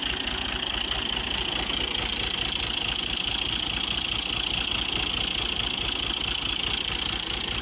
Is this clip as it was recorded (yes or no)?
yes